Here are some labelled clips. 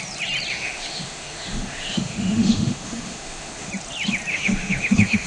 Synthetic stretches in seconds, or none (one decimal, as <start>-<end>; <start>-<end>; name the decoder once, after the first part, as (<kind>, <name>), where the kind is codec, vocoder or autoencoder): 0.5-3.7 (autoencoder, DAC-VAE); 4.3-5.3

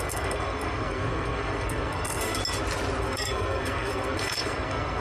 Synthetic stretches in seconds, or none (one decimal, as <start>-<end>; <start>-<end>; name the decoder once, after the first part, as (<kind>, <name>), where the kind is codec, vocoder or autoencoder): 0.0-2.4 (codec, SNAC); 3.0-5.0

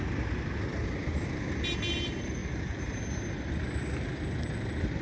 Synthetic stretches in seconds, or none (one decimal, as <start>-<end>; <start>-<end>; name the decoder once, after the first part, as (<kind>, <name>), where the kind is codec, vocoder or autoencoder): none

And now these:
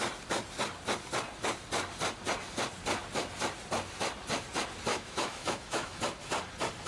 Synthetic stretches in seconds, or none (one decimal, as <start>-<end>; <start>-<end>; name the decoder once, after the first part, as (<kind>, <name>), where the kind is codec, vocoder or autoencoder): 4.9-6.0 (autoencoder, DAC-VAE)

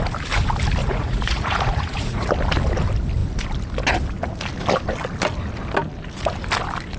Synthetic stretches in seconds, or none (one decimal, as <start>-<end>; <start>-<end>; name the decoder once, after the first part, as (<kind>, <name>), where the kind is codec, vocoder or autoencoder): 0.8-2.3 (vocoder, Vocos)

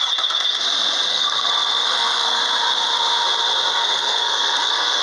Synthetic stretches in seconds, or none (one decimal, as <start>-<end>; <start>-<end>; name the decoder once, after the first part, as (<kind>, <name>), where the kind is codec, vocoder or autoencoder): 1.1-2.4 (codec, SNAC); 3.8-5.0